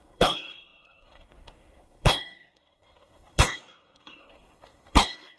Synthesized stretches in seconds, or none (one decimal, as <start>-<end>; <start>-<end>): 0.0-5.4